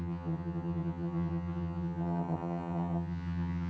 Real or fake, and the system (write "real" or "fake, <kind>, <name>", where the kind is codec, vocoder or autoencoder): fake, vocoder, HiFi-GAN